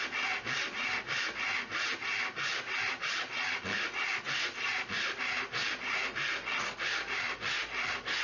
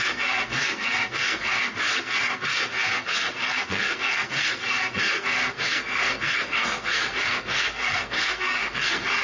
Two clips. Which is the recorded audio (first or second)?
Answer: first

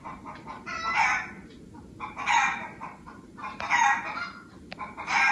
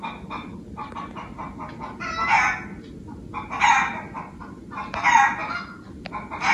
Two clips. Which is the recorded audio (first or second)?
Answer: second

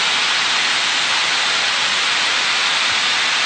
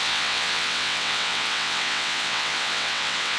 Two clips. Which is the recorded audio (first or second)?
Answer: first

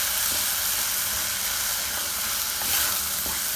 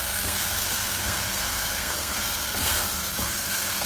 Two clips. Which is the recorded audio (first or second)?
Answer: first